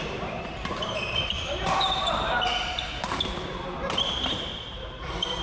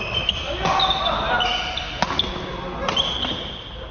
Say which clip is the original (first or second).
second